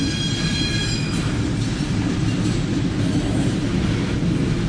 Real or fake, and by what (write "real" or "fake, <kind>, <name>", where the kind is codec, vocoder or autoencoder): real